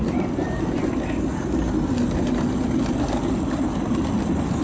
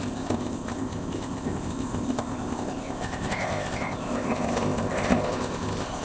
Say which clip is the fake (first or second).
second